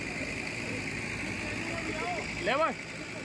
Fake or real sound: real